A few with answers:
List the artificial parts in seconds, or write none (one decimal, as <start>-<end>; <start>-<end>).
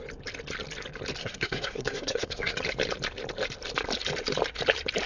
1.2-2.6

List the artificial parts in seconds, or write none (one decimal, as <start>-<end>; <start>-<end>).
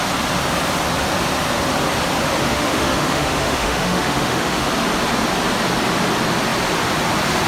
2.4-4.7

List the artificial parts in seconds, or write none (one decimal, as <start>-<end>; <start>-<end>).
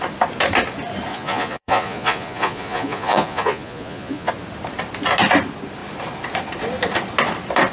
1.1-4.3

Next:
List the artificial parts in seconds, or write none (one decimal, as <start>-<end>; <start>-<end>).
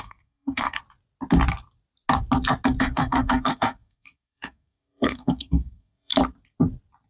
0.0-0.8; 2.8-6.1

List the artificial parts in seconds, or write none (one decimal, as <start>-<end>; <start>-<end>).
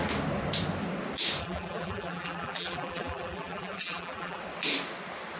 1.4-4.4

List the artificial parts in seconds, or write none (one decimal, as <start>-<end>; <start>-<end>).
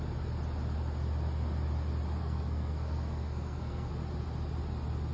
2.2-3.9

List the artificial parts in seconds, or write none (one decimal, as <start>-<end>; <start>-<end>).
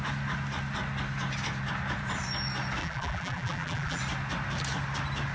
2.8-4.0